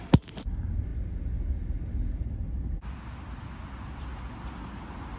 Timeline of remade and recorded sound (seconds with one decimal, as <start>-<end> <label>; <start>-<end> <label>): 0.0-5.2 recorded

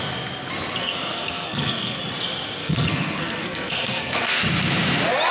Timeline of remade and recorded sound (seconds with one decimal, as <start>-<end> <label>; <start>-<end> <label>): 0.0-0.8 recorded; 0.8-2.0 remade; 2.0-2.6 recorded; 2.6-4.4 remade; 4.4-5.3 recorded